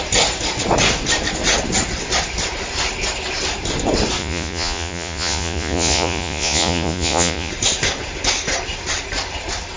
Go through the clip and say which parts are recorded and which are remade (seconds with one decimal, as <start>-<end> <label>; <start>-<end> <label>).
0.0-4.2 recorded; 4.2-7.5 remade; 7.5-9.8 recorded